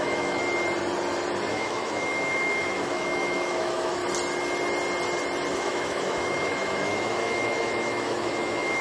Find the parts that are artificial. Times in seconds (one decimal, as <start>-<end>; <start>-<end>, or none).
0.0-0.4; 1.5-4.0; 5.5-8.8